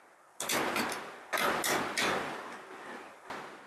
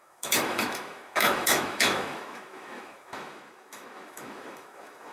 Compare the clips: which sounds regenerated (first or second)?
second